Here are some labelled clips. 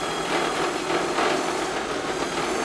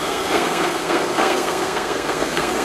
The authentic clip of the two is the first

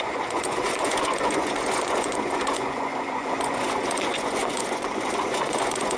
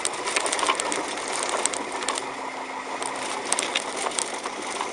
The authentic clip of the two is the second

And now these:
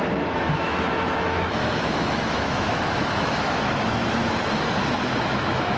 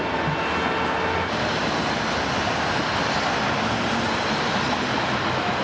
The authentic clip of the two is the second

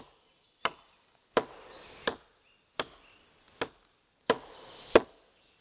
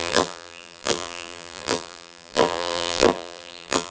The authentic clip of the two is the first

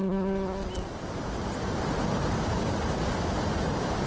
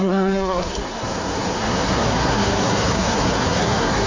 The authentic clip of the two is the first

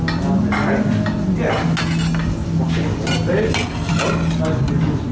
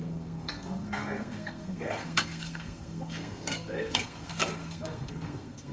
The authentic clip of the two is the first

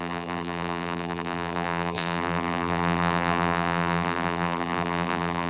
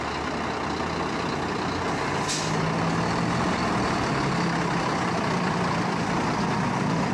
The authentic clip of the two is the second